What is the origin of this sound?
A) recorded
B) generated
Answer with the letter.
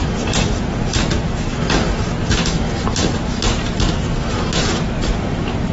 A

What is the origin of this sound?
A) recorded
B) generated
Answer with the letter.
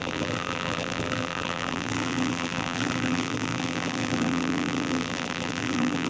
B